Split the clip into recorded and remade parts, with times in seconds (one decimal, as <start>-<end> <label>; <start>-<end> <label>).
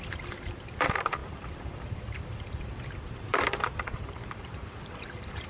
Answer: 0.0-5.5 remade